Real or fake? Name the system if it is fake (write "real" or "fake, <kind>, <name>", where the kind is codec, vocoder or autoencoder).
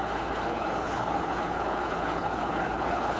fake, codec, HILCodec